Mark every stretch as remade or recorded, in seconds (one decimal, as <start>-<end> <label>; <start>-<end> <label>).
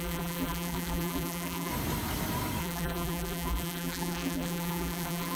0.0-1.7 remade; 1.7-2.6 recorded; 2.6-5.4 remade